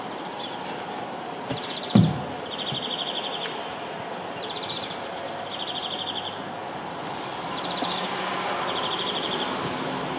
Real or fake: real